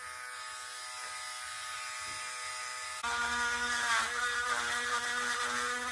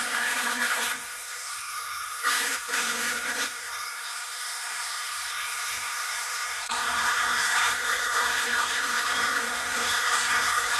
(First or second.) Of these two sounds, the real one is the first